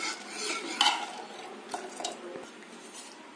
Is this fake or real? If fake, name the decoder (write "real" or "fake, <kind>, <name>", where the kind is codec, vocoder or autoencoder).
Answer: real